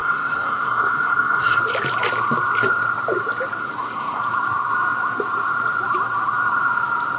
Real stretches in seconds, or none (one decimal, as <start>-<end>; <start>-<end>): 1.6-3.6; 4.2-7.2

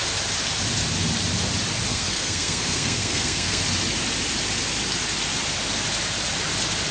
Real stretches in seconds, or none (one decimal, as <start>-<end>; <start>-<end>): 0.0-1.9; 3.6-6.9

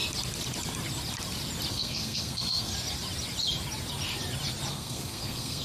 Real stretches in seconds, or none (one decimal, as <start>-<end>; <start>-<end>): 0.0-1.7; 2.7-4.7

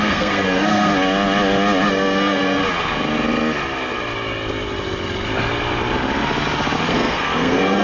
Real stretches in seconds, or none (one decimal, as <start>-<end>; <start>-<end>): 0.9-1.9; 2.6-6.9

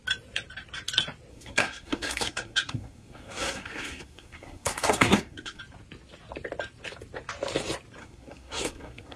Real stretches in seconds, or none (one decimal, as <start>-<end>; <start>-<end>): 0.0-1.3; 5.6-8.0

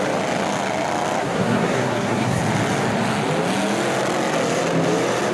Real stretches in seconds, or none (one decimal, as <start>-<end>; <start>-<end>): 0.0-1.2; 2.4-5.3

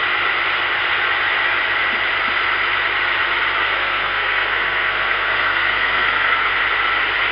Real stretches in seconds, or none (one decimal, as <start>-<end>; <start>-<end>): 0.0-3.6; 6.5-7.3